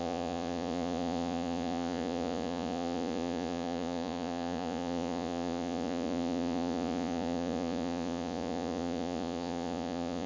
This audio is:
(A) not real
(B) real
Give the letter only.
A